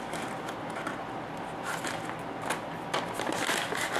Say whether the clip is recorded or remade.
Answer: recorded